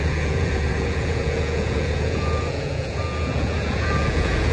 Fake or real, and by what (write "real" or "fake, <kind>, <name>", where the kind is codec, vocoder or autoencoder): fake, vocoder, Vocos